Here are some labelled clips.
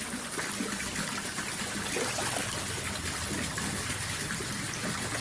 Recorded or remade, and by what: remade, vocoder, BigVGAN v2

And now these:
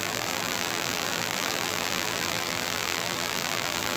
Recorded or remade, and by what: remade, vocoder, BigVGAN v2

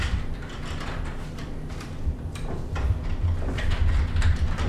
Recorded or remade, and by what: remade, vocoder, BigVGAN v2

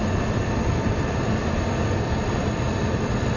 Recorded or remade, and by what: recorded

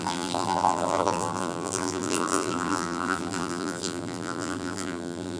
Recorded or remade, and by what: remade, vocoder, BigVGAN v2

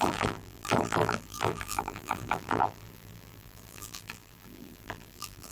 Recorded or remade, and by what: remade, vocoder, BigVGAN v2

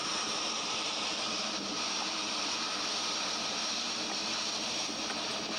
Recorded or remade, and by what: recorded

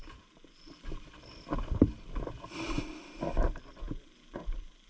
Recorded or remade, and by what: recorded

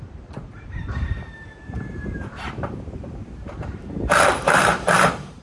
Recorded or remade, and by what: remade, vocoder, BigVGAN v2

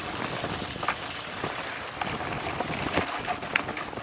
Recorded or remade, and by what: recorded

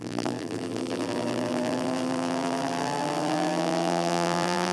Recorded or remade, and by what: remade, vocoder, BigVGAN v2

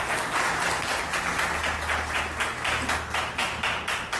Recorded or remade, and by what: recorded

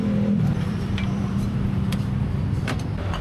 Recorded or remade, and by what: remade, vocoder, BigVGAN v2